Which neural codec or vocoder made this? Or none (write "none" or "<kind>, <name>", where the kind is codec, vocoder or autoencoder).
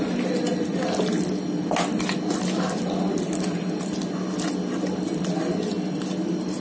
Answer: none